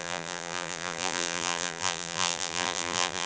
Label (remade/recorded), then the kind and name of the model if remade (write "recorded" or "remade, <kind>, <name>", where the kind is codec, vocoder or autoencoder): remade, vocoder, BigVGAN v2